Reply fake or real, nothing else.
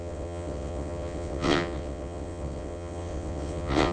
fake